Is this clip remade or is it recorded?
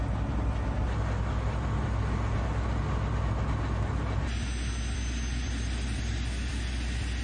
recorded